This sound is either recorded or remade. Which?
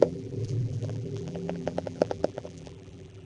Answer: remade